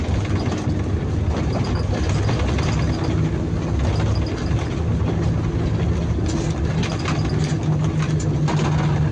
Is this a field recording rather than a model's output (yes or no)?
yes